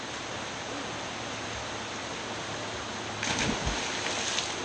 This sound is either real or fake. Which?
real